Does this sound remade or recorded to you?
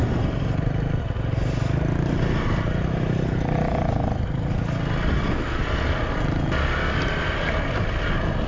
recorded